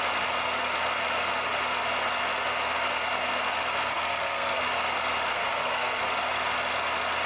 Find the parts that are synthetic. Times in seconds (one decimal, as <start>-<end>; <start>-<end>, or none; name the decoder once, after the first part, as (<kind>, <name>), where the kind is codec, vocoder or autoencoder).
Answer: 3.9-4.6 (codec, SNAC); 5.3-6.0